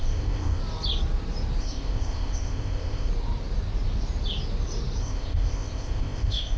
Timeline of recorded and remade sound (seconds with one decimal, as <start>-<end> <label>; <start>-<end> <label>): 0.0-0.6 remade; 0.6-1.6 recorded; 1.6-3.1 remade; 3.1-5.0 recorded; 5.0-6.6 remade

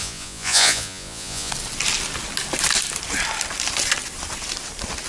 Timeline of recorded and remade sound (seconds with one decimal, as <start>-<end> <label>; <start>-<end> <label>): 0.0-1.5 remade; 1.5-5.1 recorded

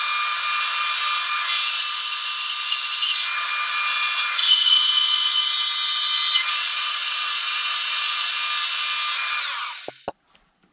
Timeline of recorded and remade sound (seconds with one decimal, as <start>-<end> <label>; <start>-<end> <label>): 0.0-4.4 recorded; 4.4-4.9 remade; 4.9-6.4 recorded; 6.4-8.3 remade; 8.3-10.7 recorded

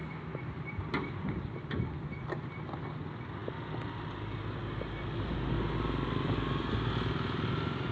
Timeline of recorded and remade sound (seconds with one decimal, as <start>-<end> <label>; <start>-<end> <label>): 0.0-1.8 remade; 1.8-7.9 recorded

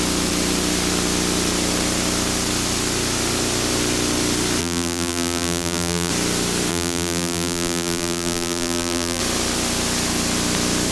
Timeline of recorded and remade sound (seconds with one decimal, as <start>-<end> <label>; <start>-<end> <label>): 0.0-4.6 recorded; 4.6-6.1 remade; 6.1-6.7 recorded; 6.7-9.2 remade; 9.2-10.9 recorded

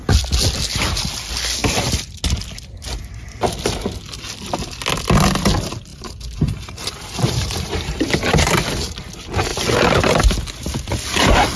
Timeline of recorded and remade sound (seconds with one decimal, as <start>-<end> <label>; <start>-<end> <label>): 0.0-5.9 recorded; 5.9-8.5 remade; 8.5-11.6 recorded